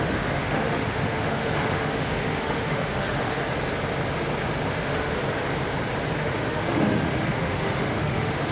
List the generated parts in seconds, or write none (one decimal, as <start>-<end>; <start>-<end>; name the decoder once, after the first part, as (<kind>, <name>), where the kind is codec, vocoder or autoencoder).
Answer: 0.0-3.4 (autoencoder, DAC-VAE); 4.7-5.2; 6.2-8.5